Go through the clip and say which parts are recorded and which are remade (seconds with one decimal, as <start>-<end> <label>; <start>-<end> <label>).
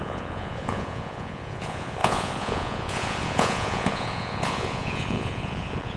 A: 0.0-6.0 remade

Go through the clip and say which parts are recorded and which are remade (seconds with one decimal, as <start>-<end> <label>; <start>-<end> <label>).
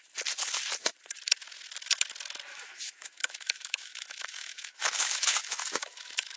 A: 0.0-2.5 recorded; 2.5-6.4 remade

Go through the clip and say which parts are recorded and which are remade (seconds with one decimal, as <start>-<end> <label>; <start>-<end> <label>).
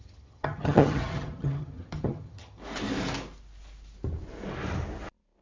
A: 0.0-2.6 remade; 2.6-5.4 recorded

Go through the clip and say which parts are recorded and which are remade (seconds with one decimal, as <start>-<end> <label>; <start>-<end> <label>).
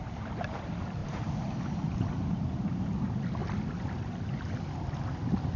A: 0.0-1.0 recorded; 1.0-1.9 remade; 1.9-3.4 recorded; 3.4-4.1 remade; 4.1-5.6 recorded